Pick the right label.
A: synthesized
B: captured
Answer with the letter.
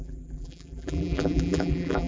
A